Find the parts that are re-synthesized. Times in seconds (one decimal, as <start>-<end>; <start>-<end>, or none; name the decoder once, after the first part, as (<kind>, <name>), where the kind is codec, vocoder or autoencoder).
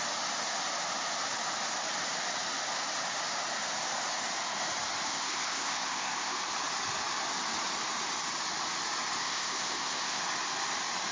5.1-6.4 (codec, ZipCodec); 9.2-10.2